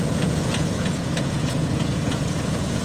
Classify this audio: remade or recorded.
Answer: remade